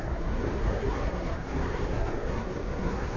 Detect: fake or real fake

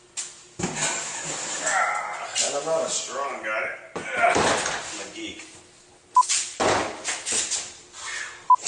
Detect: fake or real real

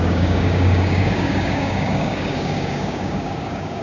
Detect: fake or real fake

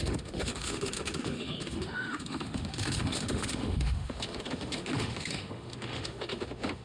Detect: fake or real fake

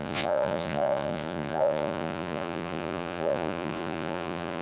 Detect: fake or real fake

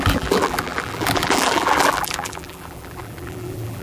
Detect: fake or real fake